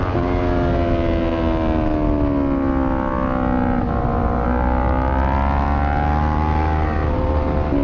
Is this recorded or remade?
recorded